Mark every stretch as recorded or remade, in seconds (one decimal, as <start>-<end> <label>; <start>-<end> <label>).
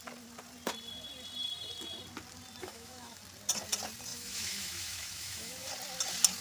0.0-2.6 recorded; 2.6-3.2 remade; 3.2-4.1 recorded; 4.1-5.7 remade; 5.7-6.4 recorded